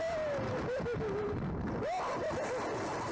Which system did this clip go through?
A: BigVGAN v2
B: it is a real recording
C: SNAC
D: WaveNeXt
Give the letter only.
B